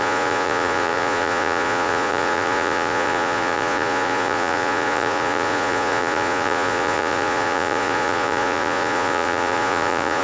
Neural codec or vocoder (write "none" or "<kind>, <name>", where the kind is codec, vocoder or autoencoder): vocoder, Vocos